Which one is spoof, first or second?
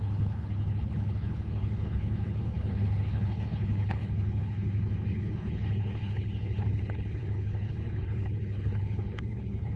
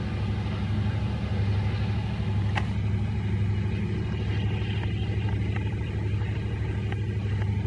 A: first